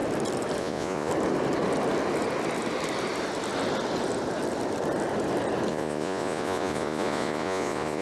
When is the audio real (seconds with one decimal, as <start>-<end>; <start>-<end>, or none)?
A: 0.0-0.6; 1.1-5.7